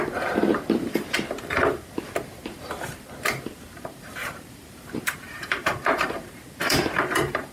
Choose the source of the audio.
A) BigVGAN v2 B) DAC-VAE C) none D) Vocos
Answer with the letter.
A